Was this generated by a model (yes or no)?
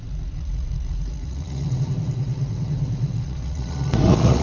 yes